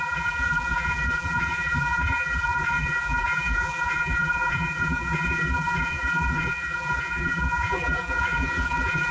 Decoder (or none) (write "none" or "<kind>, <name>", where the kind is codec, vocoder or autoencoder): vocoder, BigVGAN v2